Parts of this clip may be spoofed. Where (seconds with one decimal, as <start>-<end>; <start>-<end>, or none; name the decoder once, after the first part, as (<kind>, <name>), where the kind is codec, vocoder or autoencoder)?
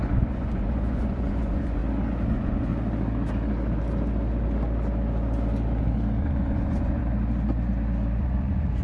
0.0-1.8 (vocoder, Vocos); 2.3-2.7; 6.2-7.0; 8.2-8.8